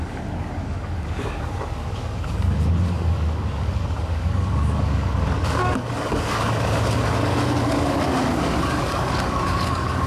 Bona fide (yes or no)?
no